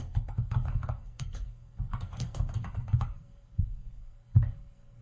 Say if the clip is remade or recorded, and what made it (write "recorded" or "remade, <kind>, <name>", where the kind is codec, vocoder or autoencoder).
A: remade, codec, SNAC